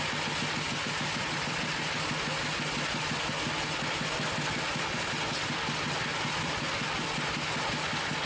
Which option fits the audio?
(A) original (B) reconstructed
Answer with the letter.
A